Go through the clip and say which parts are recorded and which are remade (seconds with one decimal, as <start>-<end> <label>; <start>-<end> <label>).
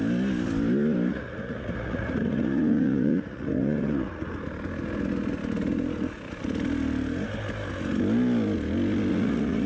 0.0-1.1 recorded; 1.1-4.3 remade; 4.3-9.1 recorded; 9.1-9.7 remade